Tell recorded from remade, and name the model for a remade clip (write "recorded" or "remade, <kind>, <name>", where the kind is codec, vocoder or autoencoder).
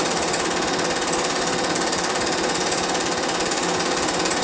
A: recorded